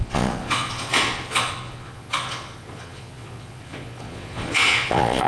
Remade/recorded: remade